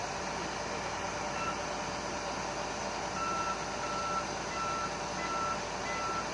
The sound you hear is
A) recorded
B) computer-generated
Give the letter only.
A